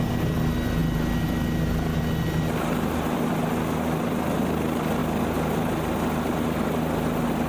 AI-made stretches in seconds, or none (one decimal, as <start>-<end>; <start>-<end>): none

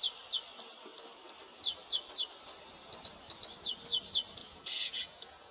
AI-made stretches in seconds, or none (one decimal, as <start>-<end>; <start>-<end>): 4.4-5.5

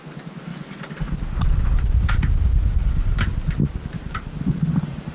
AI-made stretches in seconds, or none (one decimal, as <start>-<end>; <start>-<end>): none